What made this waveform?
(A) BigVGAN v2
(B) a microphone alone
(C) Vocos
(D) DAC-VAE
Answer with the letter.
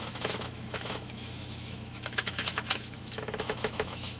D